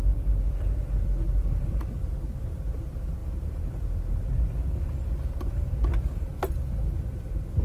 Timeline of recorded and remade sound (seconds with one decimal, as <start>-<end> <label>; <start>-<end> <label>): 0.0-7.6 recorded